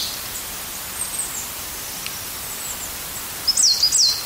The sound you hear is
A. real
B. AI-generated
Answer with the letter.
A